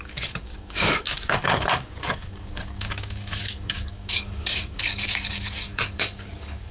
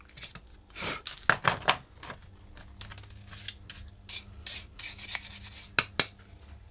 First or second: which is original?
second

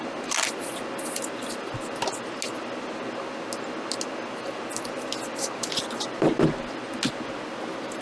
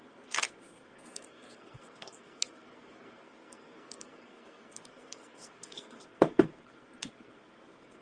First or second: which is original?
first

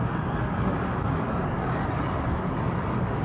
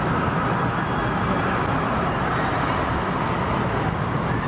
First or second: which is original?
second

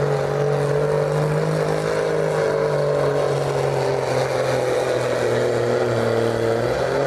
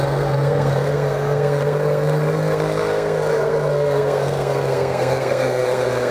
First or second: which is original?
first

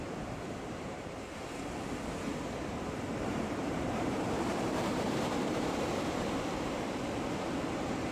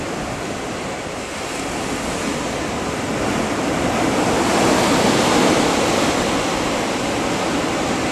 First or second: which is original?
second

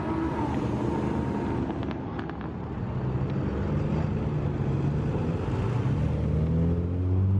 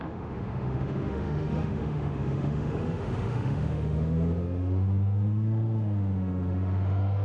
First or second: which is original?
first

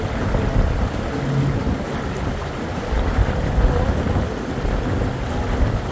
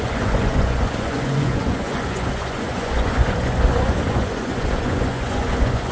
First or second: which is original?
first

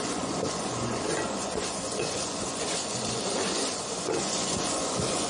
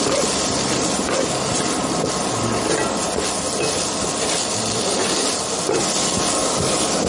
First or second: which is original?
second